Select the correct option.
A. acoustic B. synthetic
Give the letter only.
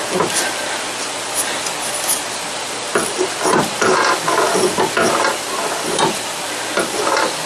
A